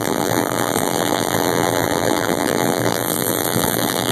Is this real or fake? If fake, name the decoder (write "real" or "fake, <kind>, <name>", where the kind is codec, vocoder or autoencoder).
fake, vocoder, BigVGAN v2